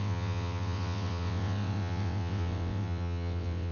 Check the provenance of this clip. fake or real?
fake